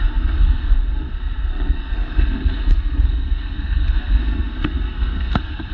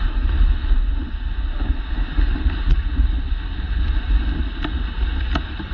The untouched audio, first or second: second